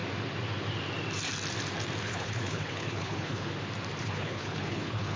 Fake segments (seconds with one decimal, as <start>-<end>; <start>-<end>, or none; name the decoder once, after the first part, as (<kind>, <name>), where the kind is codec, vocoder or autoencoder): 2.0-3.5 (codec, HILCodec); 4.0-5.2